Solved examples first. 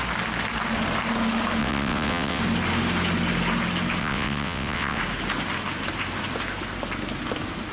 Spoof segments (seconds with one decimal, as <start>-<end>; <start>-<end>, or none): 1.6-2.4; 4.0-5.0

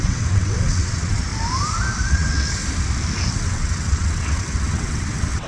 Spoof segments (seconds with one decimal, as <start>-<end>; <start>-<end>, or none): 0.0-1.3; 2.1-2.6; 3.4-5.5

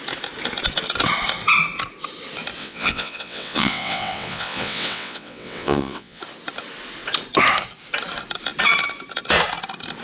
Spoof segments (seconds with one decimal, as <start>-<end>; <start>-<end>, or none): 2.6-6.2